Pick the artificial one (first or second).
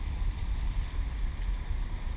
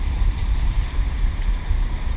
second